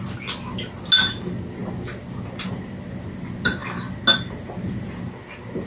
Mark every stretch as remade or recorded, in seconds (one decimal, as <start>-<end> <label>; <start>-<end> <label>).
0.0-5.7 recorded